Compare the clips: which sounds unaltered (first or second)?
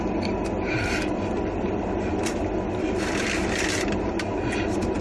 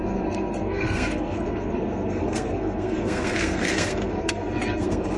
first